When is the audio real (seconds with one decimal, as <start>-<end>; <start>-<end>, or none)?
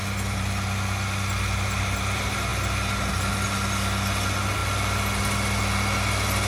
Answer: 0.0-6.5